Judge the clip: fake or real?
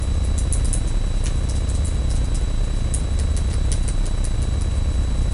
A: real